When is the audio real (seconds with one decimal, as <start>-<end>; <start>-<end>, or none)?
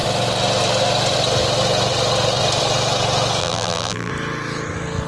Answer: 0.0-3.4; 4.1-5.1